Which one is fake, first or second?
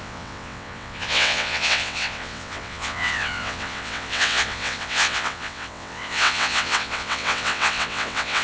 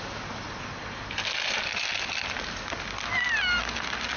first